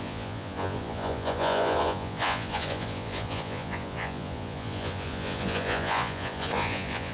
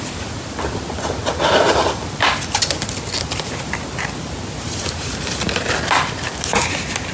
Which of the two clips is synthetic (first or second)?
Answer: first